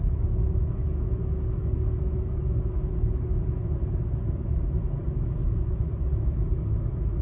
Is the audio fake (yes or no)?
yes